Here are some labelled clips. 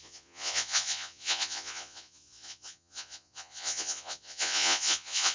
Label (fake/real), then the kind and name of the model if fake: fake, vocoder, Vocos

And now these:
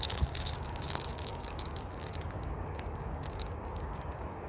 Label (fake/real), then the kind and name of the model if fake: fake, codec, DAC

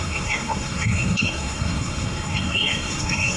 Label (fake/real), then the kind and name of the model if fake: fake, codec, SNAC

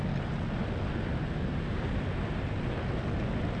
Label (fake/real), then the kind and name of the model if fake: real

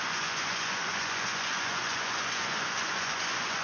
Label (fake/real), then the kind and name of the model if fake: fake, vocoder, Vocos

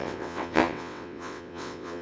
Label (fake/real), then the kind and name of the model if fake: fake, vocoder, WaveNeXt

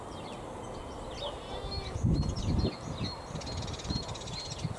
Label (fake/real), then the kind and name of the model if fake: real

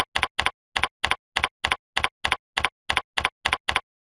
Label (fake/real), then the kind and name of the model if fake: real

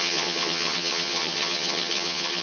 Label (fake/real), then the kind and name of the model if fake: fake, vocoder, HiFi-GAN